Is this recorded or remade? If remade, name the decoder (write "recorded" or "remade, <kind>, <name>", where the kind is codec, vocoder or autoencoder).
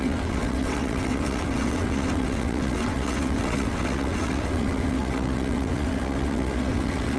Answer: remade, vocoder, WaveNeXt